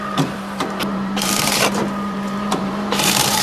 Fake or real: fake